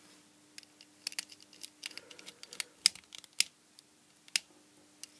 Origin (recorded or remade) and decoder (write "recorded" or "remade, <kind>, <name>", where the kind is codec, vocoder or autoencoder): recorded